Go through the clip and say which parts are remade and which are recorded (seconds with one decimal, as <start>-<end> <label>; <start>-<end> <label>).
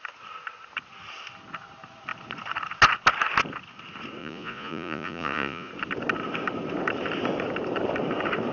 0.0-4.2 recorded; 4.2-5.7 remade; 5.7-8.5 recorded